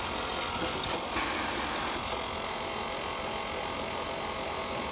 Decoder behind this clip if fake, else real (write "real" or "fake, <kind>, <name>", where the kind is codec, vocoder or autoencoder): real